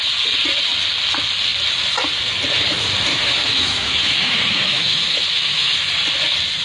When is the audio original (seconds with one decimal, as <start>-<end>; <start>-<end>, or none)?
0.0-3.1; 5.9-6.6